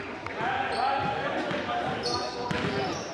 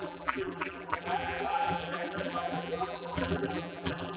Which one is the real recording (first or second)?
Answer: first